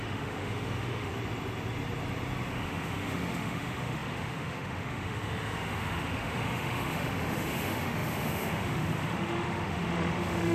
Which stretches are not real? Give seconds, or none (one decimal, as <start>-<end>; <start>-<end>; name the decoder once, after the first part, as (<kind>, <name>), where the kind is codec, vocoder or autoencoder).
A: 0.0-1.1 (autoencoder, DAC-VAE); 2.5-10.5